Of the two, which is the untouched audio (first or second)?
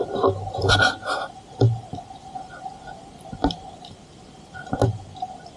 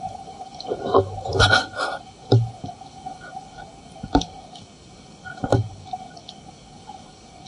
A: first